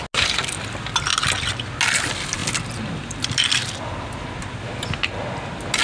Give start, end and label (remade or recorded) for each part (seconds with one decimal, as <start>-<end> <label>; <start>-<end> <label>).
0.0-5.8 recorded